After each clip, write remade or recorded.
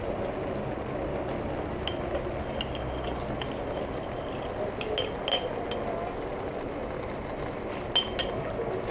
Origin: recorded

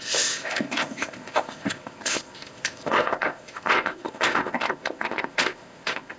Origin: remade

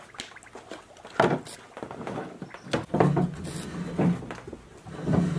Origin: recorded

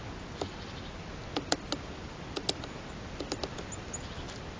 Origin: recorded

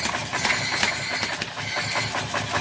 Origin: recorded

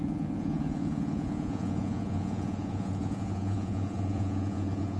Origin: remade